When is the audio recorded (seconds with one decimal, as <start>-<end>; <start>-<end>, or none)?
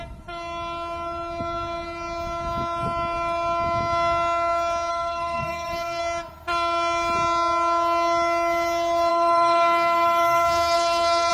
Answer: 0.0-4.9; 6.0-9.1